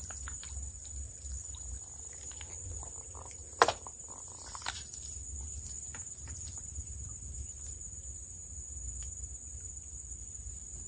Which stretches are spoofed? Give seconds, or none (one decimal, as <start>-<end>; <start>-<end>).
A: none